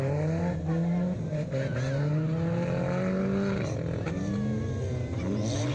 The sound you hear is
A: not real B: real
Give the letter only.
B